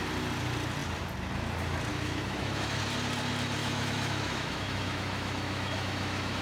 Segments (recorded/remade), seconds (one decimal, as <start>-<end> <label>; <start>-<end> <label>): 0.0-1.9 recorded; 1.9-2.8 remade; 2.8-3.6 recorded; 3.6-6.4 remade